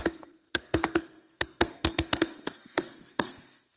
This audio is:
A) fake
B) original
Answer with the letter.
A